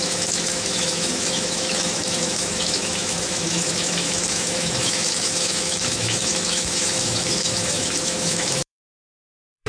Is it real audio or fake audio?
fake